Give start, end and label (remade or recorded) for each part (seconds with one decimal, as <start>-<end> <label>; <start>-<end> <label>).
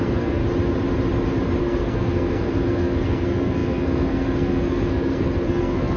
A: 0.0-0.4 remade; 0.4-1.6 recorded; 1.6-6.0 remade